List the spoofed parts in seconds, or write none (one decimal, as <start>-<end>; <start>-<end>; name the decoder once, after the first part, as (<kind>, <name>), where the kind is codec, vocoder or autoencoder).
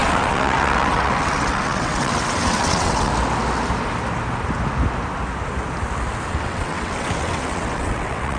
0.0-3.1 (vocoder, WaveNeXt); 6.3-8.4